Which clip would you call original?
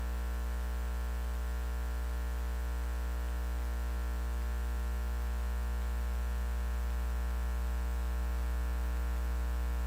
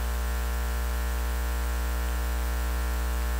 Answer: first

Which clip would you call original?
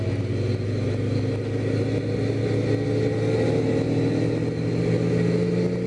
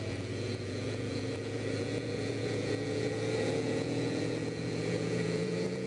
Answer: first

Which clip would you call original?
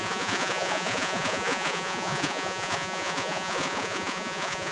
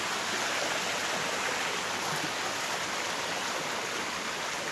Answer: second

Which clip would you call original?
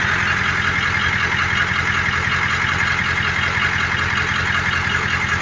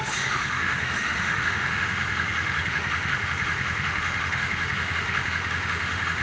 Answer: first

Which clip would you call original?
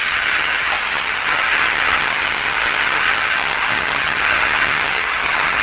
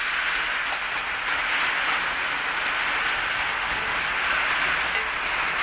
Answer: second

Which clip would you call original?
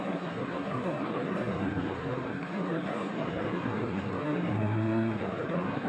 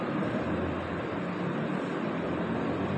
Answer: second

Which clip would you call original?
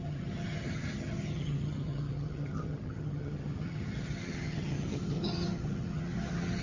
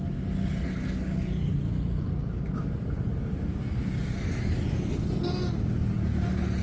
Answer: second